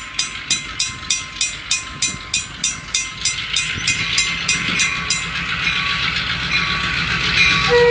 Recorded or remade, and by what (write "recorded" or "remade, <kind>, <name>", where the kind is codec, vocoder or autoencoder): recorded